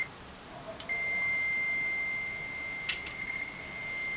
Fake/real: real